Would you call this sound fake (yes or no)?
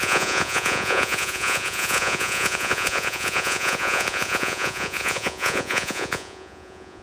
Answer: yes